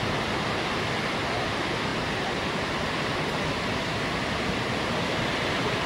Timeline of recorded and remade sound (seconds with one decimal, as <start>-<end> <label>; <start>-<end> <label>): 0.0-5.9 recorded